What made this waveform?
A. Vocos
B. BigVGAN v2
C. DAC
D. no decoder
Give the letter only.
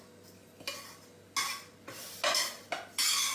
D